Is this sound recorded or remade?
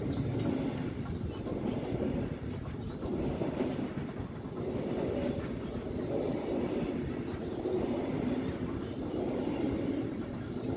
recorded